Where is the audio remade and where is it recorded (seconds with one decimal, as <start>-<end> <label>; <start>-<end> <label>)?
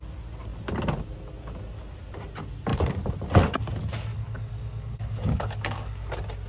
0.0-4.1 recorded; 4.1-6.1 remade; 6.1-6.5 recorded